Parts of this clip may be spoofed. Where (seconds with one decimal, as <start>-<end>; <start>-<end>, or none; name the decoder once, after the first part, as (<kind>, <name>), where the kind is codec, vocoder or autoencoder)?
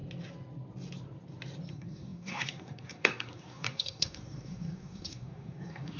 1.7-6.0 (codec, SNAC)